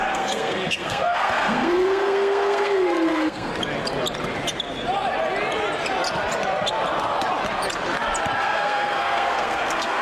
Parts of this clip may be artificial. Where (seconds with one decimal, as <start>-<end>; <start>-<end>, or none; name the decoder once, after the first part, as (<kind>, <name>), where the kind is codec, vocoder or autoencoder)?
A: 0.0-3.5 (codec, SNAC); 8.4-10.0